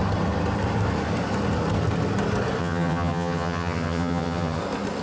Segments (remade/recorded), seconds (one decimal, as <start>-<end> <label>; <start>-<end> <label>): 0.0-2.6 recorded; 2.6-4.6 remade; 4.6-5.0 recorded